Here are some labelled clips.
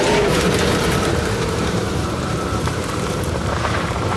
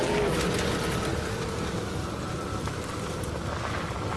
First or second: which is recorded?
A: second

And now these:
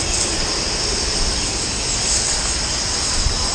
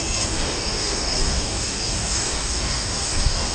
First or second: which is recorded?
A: first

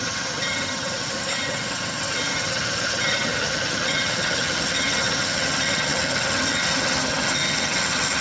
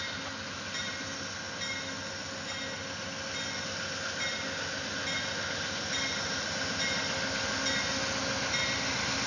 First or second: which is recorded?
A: second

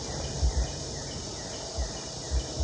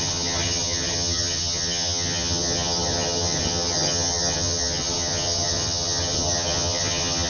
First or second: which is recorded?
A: first